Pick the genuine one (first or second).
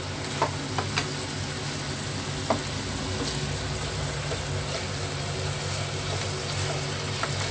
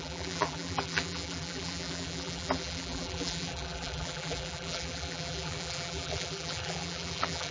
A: first